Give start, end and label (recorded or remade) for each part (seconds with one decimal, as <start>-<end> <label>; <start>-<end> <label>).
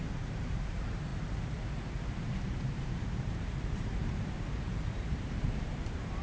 0.0-6.2 remade